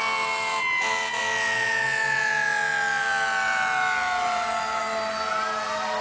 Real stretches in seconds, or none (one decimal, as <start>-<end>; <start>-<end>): 0.0-6.0